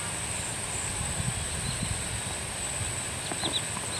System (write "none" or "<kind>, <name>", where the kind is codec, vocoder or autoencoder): none